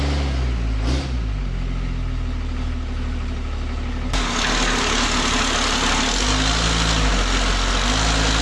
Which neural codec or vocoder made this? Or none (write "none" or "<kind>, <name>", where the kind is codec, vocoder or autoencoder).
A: none